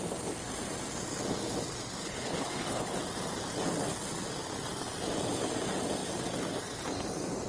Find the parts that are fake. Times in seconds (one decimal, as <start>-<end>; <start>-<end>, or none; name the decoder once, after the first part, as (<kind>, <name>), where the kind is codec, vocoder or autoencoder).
2.0-3.0 (codec, HILCodec)